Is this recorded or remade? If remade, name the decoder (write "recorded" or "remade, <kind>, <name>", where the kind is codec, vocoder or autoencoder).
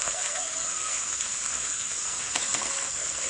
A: remade, codec, SNAC